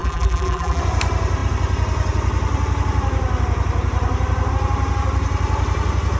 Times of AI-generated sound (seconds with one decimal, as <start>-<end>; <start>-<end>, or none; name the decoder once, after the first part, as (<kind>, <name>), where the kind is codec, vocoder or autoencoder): 0.0-0.8 (vocoder, BigVGAN v2)